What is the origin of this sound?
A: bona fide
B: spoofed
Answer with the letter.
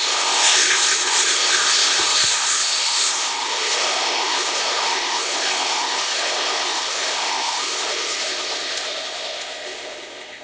B